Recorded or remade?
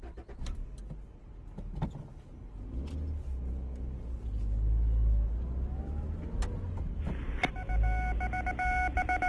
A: recorded